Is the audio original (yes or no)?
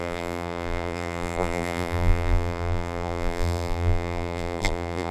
no